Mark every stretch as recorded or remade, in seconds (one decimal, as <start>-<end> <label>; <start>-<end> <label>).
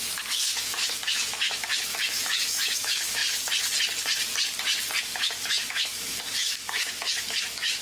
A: 0.0-3.2 remade; 3.2-5.0 recorded; 5.0-7.8 remade